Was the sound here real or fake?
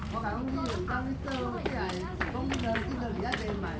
real